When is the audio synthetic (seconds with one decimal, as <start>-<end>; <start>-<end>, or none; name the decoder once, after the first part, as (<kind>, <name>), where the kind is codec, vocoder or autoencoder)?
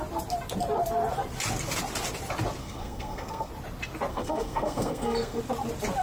2.6-3.5 (codec, SNAC); 4.1-5.4